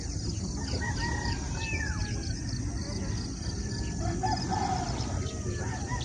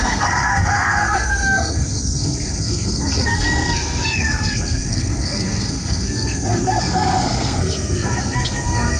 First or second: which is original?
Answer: first